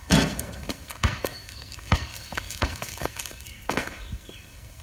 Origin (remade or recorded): remade